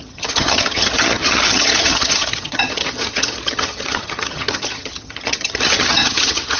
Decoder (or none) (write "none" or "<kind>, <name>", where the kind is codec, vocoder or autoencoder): vocoder, HiFi-GAN